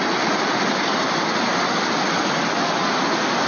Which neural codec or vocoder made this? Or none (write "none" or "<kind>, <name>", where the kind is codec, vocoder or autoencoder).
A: none